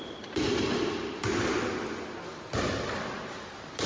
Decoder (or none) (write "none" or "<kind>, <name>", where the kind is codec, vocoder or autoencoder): none